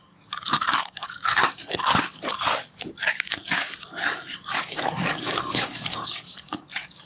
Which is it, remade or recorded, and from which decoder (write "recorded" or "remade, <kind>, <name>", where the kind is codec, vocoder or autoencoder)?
remade, codec, DAC